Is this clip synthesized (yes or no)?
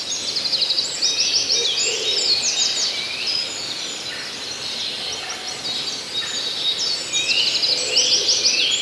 no